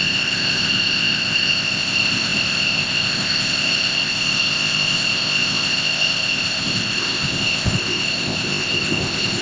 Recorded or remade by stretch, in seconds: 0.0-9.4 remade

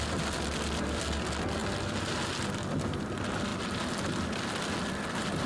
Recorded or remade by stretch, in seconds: 0.0-5.5 recorded

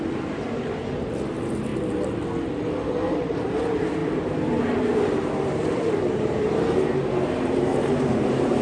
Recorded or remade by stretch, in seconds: 0.0-1.7 remade; 1.7-2.9 recorded; 2.9-8.6 remade

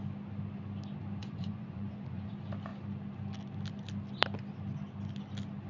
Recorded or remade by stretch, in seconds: 0.0-1.2 recorded; 1.2-2.3 remade; 2.3-5.7 recorded

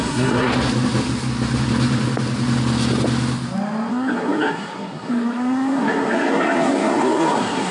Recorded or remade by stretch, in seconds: 0.0-0.5 remade; 0.5-3.9 recorded; 3.9-7.7 remade

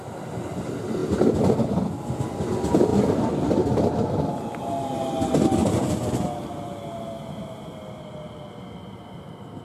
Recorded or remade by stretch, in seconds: 0.0-9.6 recorded

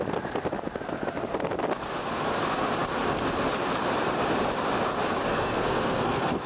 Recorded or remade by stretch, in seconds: 0.0-5.3 recorded; 5.3-6.5 remade